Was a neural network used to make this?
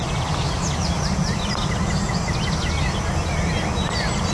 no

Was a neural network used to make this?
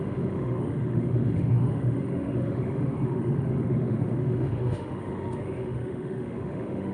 yes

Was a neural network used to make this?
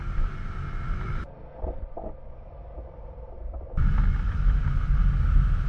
no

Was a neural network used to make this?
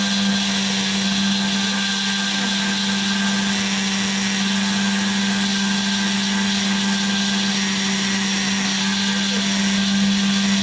no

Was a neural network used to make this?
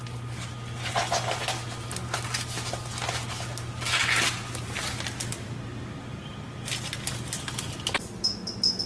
no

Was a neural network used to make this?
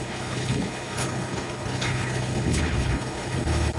yes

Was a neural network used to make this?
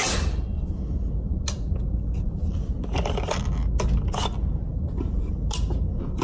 no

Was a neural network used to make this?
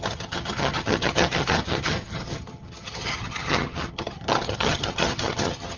yes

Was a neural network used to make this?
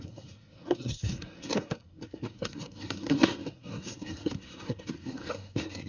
yes